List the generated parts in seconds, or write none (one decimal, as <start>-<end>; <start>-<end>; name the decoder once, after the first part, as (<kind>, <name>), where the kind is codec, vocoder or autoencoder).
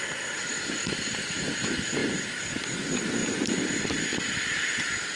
none